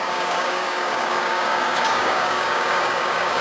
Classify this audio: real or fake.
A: fake